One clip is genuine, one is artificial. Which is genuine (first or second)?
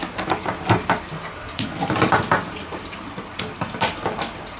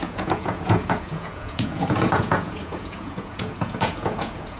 first